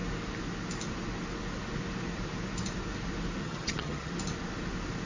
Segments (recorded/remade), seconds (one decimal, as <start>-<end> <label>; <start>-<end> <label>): 0.0-3.4 recorded; 3.4-4.1 remade; 4.1-5.1 recorded